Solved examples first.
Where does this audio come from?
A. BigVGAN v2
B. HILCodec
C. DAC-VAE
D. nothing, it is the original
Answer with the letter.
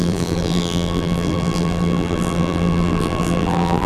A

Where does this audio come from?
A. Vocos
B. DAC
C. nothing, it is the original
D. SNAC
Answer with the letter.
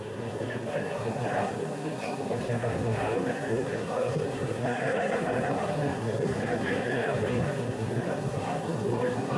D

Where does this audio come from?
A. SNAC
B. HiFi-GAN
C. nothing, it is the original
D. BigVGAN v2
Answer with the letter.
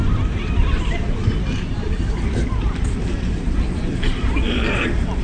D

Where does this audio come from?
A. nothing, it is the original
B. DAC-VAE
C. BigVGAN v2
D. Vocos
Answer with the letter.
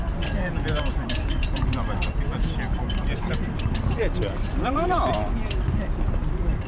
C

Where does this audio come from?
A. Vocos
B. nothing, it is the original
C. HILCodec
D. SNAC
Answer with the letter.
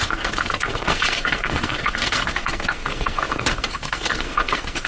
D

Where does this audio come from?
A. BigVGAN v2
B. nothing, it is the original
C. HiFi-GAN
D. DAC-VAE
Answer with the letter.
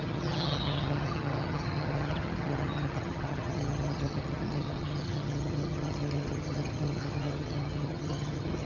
C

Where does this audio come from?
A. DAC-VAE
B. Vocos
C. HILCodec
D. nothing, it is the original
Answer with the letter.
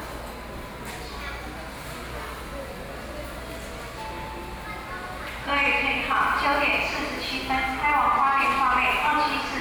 D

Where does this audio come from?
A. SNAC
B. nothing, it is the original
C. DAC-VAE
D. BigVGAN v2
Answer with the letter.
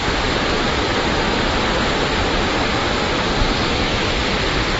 D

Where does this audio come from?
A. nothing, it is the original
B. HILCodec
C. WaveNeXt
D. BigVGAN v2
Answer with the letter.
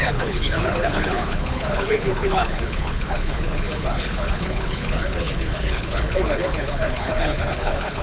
B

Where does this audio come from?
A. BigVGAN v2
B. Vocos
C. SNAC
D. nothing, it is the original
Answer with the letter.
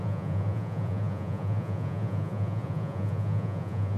B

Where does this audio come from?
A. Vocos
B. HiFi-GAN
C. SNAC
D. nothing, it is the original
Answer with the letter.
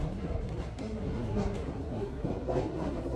C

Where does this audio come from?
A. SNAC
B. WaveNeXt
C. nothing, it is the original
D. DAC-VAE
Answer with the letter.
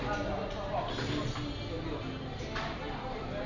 C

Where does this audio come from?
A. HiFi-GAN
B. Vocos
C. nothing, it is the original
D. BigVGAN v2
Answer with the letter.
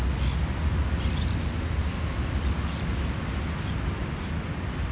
C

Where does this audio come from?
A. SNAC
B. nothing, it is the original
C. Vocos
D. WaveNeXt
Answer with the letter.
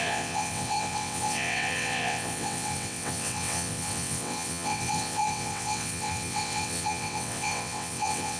D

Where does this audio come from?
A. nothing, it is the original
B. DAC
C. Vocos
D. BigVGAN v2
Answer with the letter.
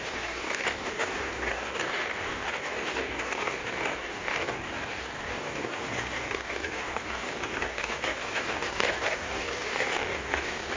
B